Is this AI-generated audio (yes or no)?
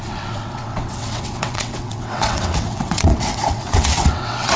yes